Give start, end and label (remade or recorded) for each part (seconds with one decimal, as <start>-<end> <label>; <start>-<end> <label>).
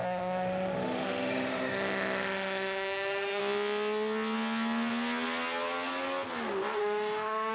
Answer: 0.0-3.4 remade; 3.4-6.8 recorded; 6.8-7.5 remade